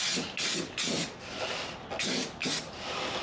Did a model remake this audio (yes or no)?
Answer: no